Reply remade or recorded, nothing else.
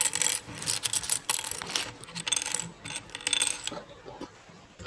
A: recorded